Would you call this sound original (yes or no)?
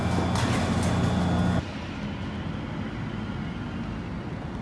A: yes